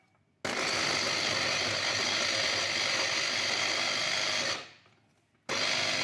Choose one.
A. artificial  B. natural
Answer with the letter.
B